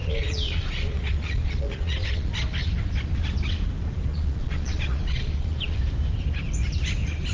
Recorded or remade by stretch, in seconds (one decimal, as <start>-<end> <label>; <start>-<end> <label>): 0.0-2.3 remade; 2.3-4.1 recorded; 4.1-5.8 remade; 5.8-7.3 recorded